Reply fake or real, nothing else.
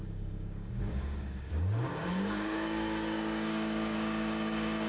fake